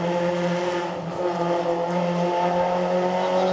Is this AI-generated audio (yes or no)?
no